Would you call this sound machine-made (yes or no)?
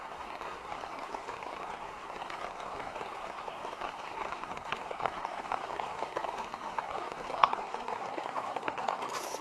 yes